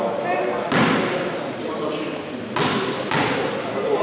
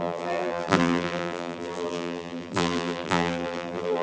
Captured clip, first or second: first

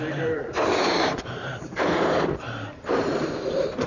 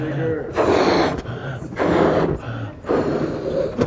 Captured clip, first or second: second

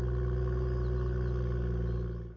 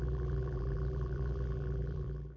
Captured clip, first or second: first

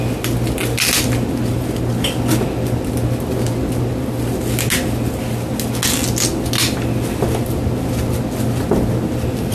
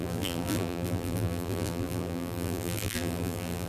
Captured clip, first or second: first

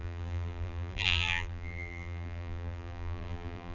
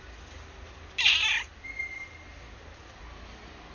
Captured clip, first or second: second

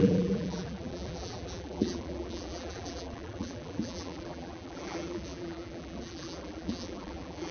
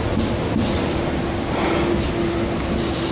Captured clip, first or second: second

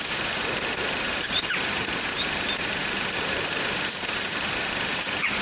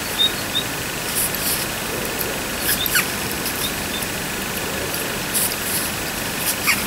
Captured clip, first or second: second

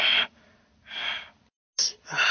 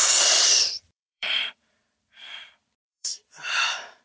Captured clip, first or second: first